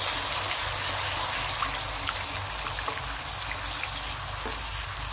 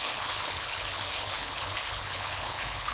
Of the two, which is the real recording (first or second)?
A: first